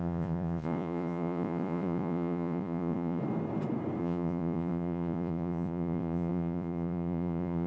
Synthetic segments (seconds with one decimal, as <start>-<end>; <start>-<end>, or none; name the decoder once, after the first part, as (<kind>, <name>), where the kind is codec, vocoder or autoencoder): 0.0-3.2 (vocoder, Vocos); 4.0-7.7